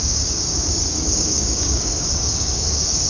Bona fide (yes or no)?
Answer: no